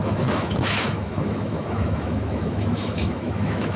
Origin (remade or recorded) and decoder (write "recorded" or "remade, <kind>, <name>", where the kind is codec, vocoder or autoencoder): remade, autoencoder, DAC-VAE